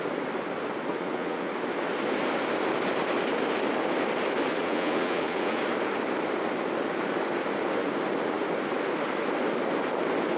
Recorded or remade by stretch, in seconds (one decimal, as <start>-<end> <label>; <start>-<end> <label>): 0.0-0.9 recorded; 0.9-1.5 remade; 1.5-4.6 recorded; 4.6-5.6 remade; 5.6-10.4 recorded